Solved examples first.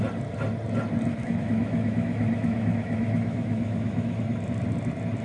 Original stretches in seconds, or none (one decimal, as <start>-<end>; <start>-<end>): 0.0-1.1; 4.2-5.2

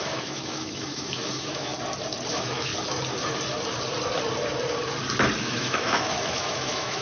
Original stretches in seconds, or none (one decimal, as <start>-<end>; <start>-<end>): 1.7-2.3; 2.7-5.4

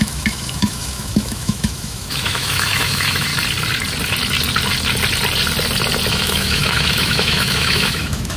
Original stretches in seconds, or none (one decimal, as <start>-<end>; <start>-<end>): 3.3-6.1

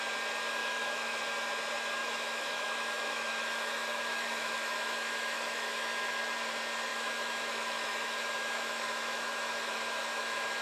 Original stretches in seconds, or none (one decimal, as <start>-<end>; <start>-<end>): 0.0-0.6; 1.2-2.0; 6.2-6.9

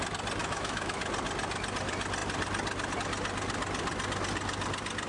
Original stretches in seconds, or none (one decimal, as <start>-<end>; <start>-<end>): 0.0-0.4; 1.0-5.1

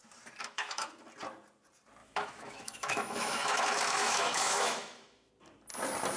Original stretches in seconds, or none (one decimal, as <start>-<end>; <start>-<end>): 0.0-0.4; 0.9-2.0; 5.3-6.2